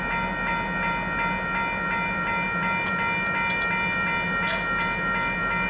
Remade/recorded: recorded